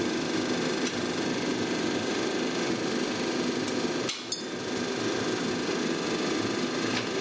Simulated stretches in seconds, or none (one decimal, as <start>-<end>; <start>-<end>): none